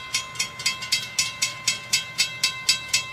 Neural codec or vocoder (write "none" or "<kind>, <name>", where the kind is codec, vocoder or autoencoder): none